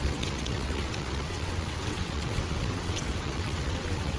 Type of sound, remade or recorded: remade